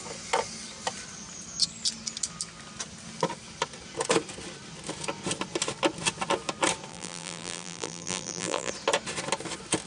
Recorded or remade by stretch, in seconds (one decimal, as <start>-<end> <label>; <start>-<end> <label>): 0.0-6.9 recorded; 6.9-8.7 remade; 8.7-9.9 recorded